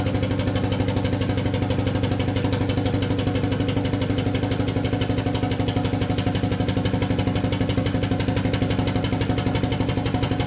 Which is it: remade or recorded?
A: recorded